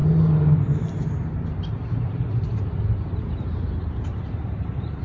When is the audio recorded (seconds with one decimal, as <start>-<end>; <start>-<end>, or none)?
0.0-1.9; 2.5-3.3